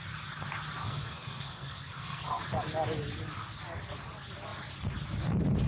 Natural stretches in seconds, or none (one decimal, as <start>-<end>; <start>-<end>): 0.0-0.8; 2.4-5.7